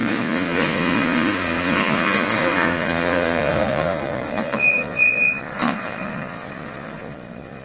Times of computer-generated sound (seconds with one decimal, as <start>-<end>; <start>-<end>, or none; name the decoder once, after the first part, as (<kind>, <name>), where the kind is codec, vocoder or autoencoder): 0.0-7.6 (vocoder, Vocos)